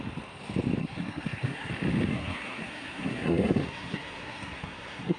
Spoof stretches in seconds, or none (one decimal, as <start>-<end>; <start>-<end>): 0.8-1.7; 2.1-5.2